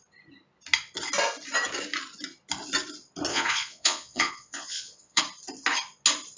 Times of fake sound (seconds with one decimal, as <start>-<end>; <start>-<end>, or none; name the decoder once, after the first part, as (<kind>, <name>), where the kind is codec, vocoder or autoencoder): 3.3-5.2 (vocoder, Vocos)